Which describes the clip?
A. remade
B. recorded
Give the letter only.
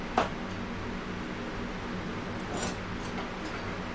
B